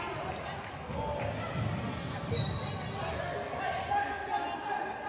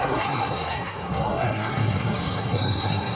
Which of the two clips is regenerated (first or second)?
second